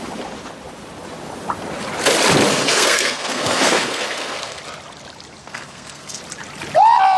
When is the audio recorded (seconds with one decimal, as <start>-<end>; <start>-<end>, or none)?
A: 0.0-2.5; 4.6-5.4; 6.2-7.2